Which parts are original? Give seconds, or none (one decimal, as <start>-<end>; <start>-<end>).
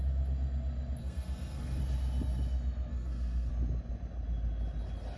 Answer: 0.0-1.0; 1.8-2.9; 3.5-5.2